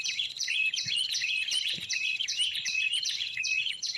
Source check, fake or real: fake